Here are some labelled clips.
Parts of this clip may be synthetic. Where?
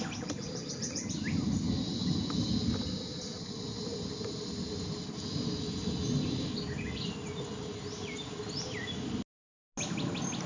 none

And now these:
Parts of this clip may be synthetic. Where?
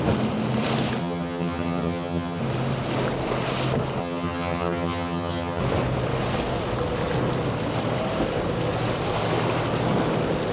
1.0-2.4 (vocoder, HiFi-GAN); 4.0-5.6